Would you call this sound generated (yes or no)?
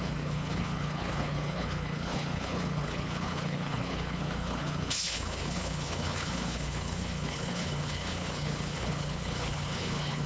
yes